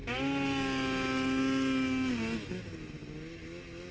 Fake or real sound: real